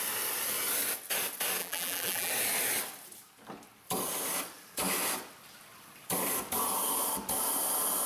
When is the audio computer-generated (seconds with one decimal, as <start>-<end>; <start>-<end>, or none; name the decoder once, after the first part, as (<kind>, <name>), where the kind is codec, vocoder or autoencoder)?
1.6-2.3 (vocoder, BigVGAN v2)